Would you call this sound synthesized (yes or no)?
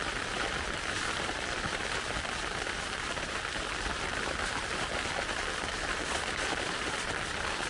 yes